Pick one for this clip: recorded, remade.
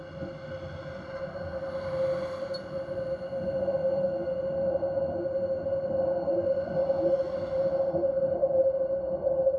recorded